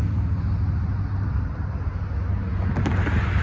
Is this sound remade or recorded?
recorded